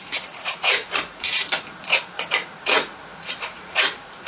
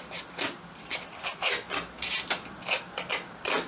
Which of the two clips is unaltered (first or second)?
second